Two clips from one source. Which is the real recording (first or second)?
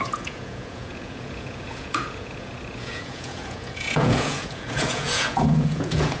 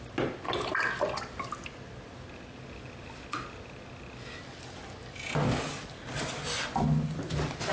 second